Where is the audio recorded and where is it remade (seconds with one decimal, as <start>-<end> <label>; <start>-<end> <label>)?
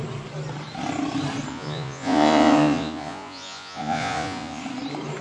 0.0-1.5 recorded; 1.5-4.6 remade; 4.6-5.2 recorded